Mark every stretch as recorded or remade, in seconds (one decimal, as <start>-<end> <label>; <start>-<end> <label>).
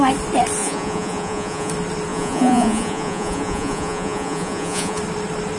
0.0-0.6 recorded; 0.6-1.7 remade; 1.7-2.1 recorded; 2.1-5.0 remade; 5.0-5.6 recorded